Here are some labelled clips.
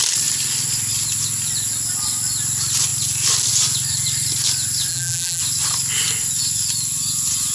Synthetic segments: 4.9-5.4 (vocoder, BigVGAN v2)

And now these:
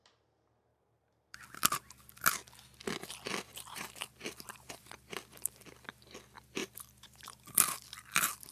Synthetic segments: 0.7-2.2 (vocoder, BigVGAN v2); 3.5-6.0; 6.6-8.5

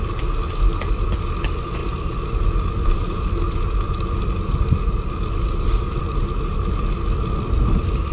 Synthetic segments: none

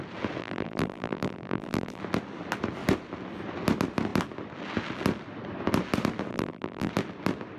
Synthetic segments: 0.4-2.0 (vocoder, BigVGAN v2); 6.3-6.9